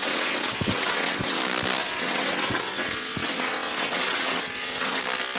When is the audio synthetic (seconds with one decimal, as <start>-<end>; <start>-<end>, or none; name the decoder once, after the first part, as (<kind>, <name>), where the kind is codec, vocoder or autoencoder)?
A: 0.0-1.4 (vocoder, WaveNeXt); 1.8-5.0